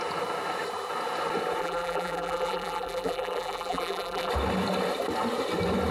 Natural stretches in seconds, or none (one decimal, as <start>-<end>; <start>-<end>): 0.0-1.6; 4.3-5.9